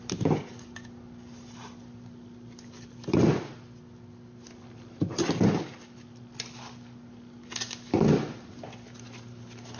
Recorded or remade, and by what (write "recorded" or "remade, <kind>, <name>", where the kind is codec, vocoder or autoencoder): recorded